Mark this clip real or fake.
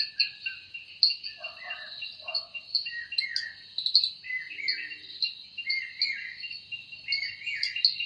real